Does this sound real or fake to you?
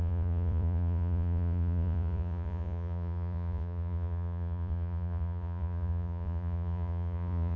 fake